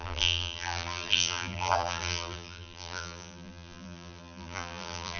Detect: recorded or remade remade